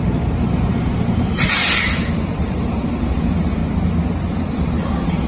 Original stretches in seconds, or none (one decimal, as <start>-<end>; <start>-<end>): 3.6-4.5